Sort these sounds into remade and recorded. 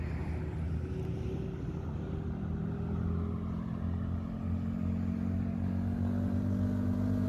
recorded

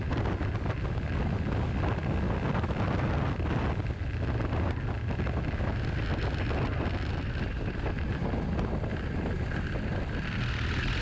recorded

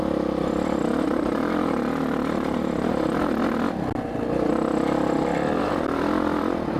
recorded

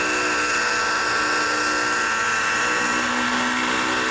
recorded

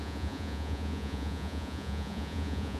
remade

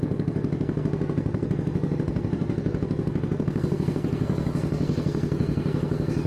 remade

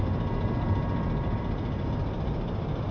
recorded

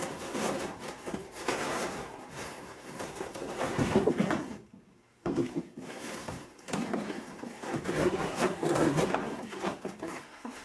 remade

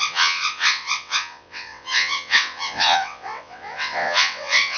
remade